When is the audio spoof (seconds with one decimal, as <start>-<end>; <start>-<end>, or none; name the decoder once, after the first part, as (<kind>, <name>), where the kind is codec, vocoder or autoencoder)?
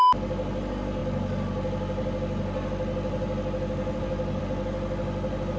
none